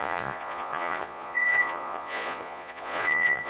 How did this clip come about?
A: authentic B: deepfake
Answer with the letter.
B